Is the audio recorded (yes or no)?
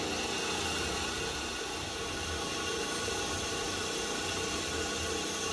yes